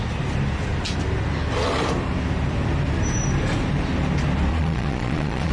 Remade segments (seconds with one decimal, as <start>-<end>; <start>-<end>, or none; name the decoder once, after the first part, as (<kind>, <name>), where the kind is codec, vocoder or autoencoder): 4.5-5.5 (vocoder, Vocos)